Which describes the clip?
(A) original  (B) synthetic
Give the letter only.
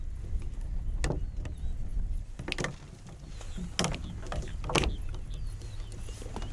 A